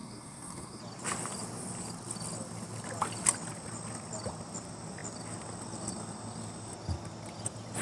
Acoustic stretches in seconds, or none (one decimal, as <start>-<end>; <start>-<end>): 0.8-7.8